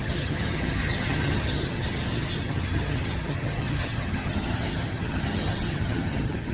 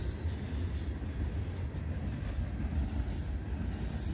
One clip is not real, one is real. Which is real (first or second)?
second